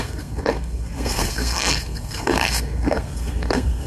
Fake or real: fake